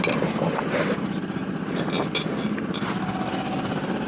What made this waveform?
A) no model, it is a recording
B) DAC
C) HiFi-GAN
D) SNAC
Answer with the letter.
A